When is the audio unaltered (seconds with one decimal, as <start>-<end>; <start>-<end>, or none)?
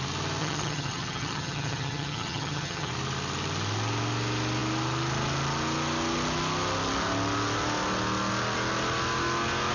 0.0-0.4; 2.9-9.7